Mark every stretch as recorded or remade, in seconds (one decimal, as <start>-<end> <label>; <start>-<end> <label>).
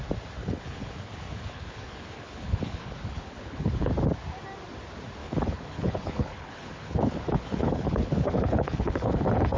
0.0-0.4 recorded; 0.4-3.9 remade; 3.9-5.2 recorded; 5.2-9.6 remade